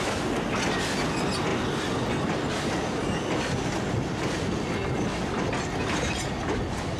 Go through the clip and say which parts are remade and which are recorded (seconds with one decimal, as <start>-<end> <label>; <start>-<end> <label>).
0.0-7.0 recorded